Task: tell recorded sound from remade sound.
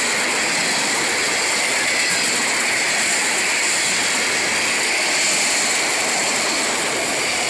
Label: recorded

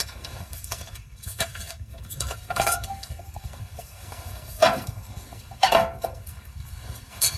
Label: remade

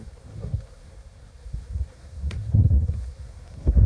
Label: remade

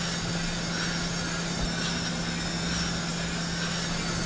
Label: recorded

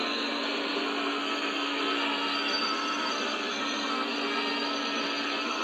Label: remade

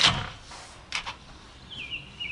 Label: recorded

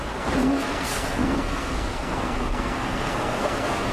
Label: remade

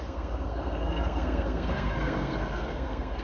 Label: remade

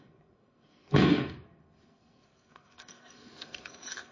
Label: remade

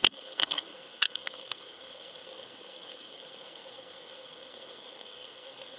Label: remade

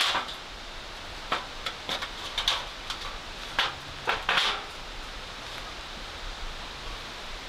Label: recorded